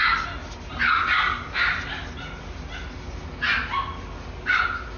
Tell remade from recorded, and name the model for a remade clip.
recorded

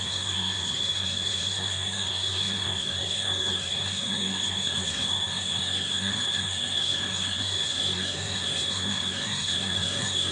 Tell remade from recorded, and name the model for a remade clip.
remade, codec, SNAC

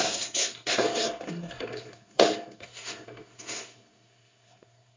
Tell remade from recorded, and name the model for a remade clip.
remade, codec, SNAC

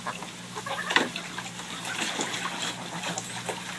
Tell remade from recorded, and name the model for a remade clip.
recorded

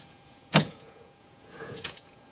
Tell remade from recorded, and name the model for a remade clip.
remade, vocoder, Vocos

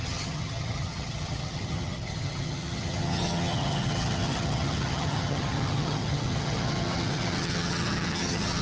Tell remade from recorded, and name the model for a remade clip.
remade, vocoder, HiFi-GAN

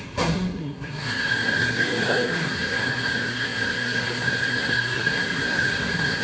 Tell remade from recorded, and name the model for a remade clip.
remade, codec, SNAC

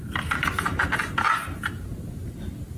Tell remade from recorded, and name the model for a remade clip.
recorded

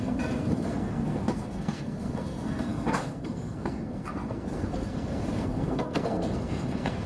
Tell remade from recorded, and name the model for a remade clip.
remade, codec, SNAC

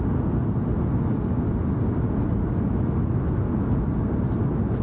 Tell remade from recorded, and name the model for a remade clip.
recorded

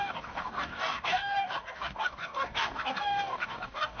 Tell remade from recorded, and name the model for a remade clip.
remade, codec, DAC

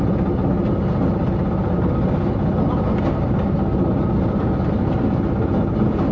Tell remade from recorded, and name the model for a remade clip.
recorded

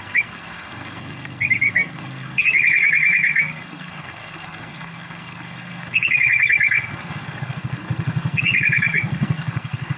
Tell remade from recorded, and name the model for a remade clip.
remade, codec, SNAC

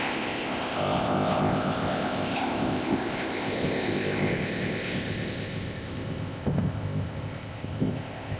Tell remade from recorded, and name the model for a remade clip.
remade, codec, ZipCodec